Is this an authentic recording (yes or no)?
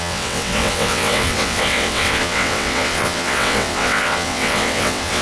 no